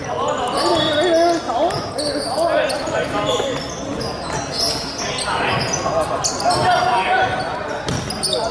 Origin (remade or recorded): recorded